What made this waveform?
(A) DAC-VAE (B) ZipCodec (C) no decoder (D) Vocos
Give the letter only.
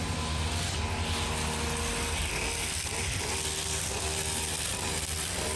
C